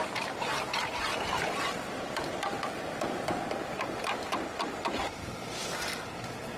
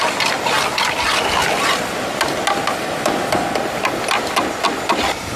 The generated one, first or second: first